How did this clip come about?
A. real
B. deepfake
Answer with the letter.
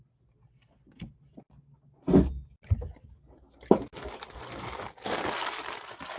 A